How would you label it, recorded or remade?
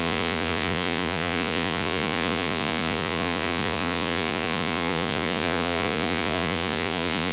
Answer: remade